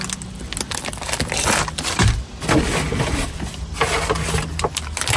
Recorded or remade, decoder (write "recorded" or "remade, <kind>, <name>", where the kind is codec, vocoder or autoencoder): recorded